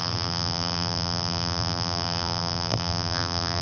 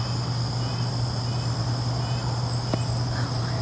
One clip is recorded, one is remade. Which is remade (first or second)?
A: first